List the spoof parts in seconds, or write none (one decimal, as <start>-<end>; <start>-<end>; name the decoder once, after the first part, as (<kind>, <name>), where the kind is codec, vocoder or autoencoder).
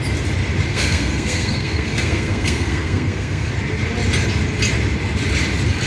0.7-3.5 (codec, SNAC)